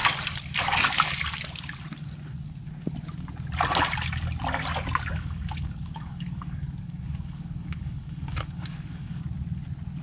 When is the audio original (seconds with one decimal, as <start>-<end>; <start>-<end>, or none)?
0.0-5.1; 9.2-10.0